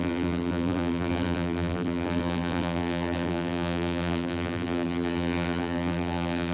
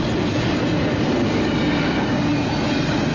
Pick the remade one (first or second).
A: first